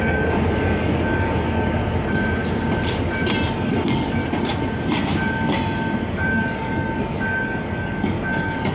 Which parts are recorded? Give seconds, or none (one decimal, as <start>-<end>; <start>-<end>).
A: 1.8-3.5; 4.2-6.1